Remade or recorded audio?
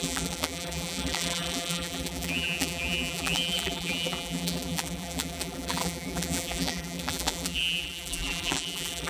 remade